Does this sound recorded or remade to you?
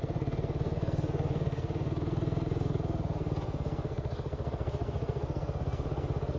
remade